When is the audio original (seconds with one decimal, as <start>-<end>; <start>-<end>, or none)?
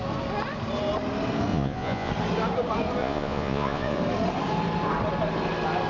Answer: 0.0-1.5; 2.1-3.0; 4.0-5.9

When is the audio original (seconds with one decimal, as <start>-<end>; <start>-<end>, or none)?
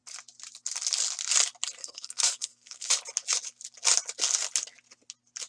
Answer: 0.0-1.8; 2.9-5.5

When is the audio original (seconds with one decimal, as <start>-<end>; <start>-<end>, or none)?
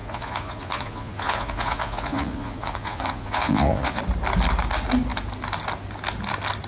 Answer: 4.0-6.7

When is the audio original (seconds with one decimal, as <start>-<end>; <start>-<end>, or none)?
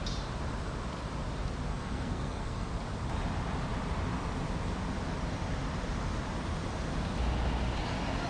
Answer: 0.0-1.7; 2.7-8.3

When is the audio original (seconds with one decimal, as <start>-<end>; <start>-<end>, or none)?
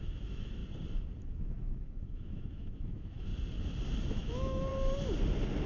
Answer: 0.6-1.3; 3.3-4.1; 4.7-5.7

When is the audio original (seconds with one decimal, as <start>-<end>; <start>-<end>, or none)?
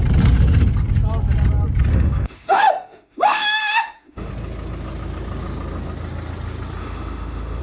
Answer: 0.0-1.9; 4.3-6.8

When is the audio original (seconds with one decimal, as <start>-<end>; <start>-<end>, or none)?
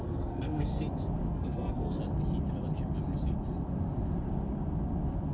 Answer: 0.7-1.3; 2.0-5.3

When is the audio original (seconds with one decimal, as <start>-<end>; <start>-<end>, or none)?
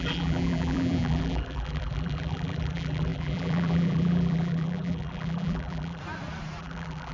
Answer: 6.0-6.6